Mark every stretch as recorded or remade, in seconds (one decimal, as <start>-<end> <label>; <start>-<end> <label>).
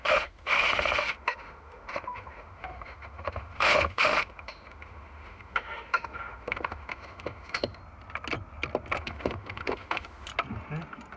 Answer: 0.0-7.8 remade; 7.8-9.0 recorded; 9.0-10.3 remade; 10.3-11.2 recorded